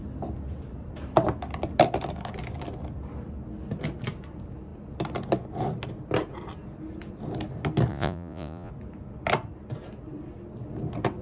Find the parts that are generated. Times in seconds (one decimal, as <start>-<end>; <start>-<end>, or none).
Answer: 7.9-8.7